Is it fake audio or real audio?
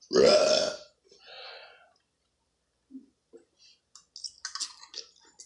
real